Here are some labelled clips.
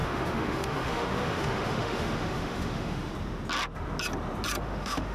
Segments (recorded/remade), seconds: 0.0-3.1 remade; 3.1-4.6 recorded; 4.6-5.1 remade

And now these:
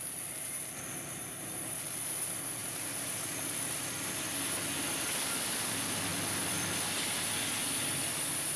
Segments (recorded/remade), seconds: 0.0-2.6 recorded; 2.6-3.9 remade; 3.9-8.6 recorded

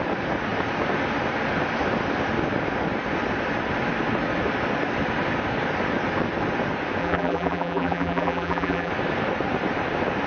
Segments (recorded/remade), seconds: 0.0-7.0 recorded; 7.0-8.9 remade; 8.9-10.3 recorded

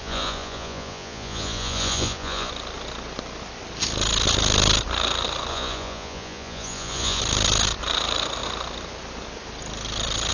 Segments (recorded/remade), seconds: 0.0-2.5 remade; 2.5-5.5 recorded; 5.5-7.2 remade; 7.2-10.3 recorded

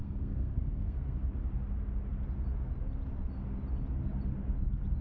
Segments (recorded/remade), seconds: 0.0-1.2 remade; 1.2-5.0 recorded

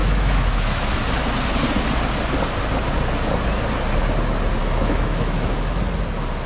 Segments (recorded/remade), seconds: 0.0-0.9 remade; 0.9-4.6 recorded; 4.6-5.8 remade; 5.8-6.5 recorded

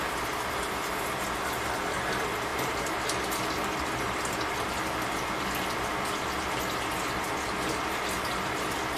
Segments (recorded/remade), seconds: 0.0-9.0 recorded